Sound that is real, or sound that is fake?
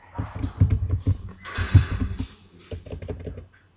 real